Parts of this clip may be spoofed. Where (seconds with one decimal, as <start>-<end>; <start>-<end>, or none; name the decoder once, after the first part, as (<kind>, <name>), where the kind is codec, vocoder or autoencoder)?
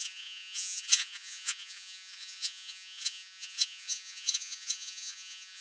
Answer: 0.0-5.6 (vocoder, Vocos)